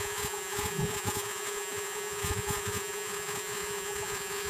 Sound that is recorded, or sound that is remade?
remade